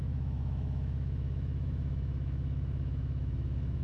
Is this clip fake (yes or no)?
yes